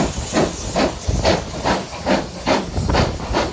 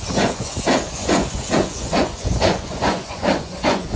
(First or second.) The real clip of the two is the first